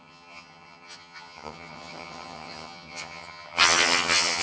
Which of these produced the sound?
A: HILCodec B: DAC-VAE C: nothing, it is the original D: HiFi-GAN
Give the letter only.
D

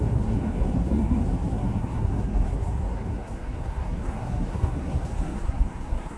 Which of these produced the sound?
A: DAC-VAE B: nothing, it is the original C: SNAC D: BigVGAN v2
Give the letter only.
C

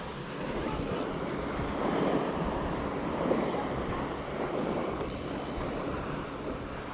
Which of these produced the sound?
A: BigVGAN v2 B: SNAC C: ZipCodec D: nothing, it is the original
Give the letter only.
D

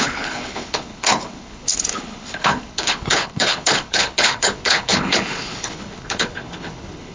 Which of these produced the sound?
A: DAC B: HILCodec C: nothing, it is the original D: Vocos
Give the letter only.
B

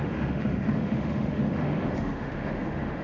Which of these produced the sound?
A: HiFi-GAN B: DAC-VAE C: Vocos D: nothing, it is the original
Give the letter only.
B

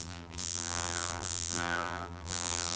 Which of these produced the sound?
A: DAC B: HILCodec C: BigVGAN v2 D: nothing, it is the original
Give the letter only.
C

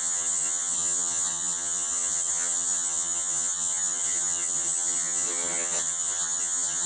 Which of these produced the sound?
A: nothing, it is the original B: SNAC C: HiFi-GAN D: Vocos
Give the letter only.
C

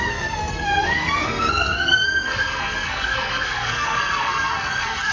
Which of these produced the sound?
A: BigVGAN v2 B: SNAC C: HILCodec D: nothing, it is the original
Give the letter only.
B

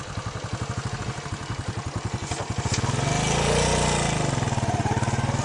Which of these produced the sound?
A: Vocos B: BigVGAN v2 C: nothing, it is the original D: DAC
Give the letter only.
C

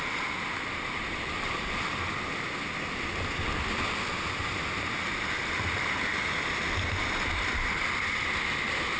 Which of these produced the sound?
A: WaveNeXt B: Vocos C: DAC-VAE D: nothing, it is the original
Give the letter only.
D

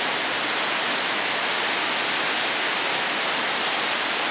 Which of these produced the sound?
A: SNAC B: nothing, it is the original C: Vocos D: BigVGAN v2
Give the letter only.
B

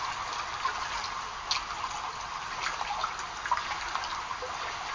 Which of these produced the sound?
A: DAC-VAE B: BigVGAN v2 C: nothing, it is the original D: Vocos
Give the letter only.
C